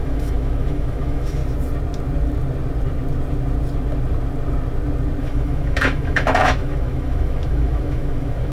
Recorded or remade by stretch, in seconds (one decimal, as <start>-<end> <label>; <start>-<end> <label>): 0.0-1.4 remade; 1.4-5.2 recorded; 5.2-8.5 remade